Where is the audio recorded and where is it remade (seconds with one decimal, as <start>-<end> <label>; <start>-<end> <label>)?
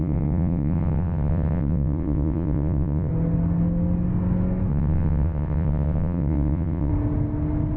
0.0-3.1 remade; 3.1-4.7 recorded; 4.7-6.9 remade; 6.9-7.8 recorded